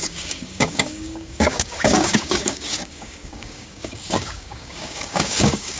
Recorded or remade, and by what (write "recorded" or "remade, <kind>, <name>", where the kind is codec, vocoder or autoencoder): remade, codec, DAC